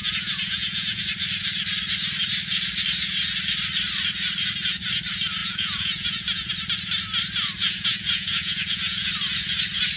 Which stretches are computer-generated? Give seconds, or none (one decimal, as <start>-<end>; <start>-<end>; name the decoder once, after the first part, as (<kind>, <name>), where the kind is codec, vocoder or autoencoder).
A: 0.0-1.0 (vocoder, Vocos); 5.4-6.5; 7.6-9.1